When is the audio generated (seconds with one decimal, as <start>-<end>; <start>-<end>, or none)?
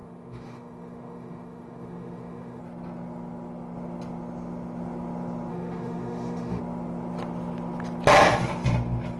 0.0-2.6; 5.5-6.6